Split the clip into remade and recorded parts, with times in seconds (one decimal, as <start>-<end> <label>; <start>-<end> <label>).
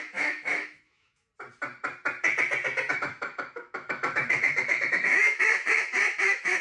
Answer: 0.0-1.3 remade; 1.3-2.9 recorded; 2.9-6.6 remade